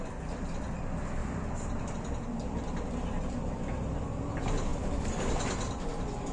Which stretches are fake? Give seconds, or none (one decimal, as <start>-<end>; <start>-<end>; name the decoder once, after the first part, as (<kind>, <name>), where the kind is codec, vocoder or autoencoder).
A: 1.2-3.5 (vocoder, BigVGAN v2)